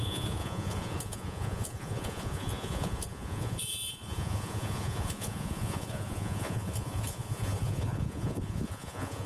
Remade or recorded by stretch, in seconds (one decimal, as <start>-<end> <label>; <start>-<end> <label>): 0.0-9.3 remade